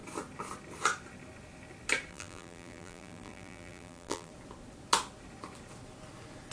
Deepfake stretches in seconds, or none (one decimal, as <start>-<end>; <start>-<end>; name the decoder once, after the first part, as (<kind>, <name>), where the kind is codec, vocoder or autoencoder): 2.1-4.3 (vocoder, BigVGAN v2)